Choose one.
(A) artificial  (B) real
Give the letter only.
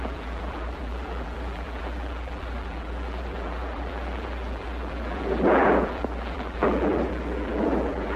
A